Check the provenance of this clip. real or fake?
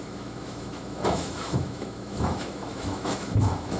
fake